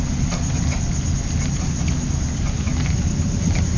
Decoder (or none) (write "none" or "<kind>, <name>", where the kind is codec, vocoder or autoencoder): none